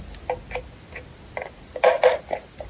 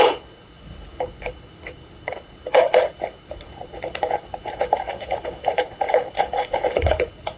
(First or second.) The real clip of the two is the first